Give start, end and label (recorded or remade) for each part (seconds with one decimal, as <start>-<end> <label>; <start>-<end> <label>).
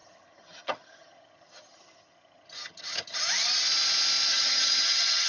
0.0-3.2 remade; 3.2-4.3 recorded; 4.3-5.3 remade